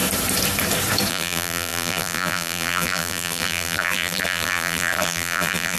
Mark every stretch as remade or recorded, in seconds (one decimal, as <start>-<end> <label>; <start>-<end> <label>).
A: 0.0-1.1 recorded; 1.1-5.8 remade